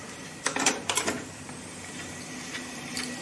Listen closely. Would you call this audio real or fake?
fake